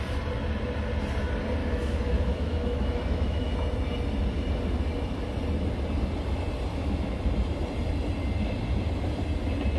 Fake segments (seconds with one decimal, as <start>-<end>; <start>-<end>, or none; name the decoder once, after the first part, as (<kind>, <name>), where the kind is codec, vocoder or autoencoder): 1.6-3.5 (autoencoder, DAC-VAE); 6.7-7.2